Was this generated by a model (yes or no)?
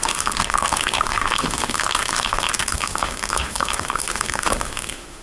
yes